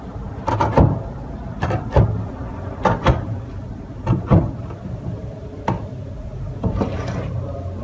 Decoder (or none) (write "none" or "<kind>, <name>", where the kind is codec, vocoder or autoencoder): vocoder, BigVGAN v2